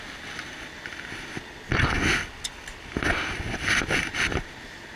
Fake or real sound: real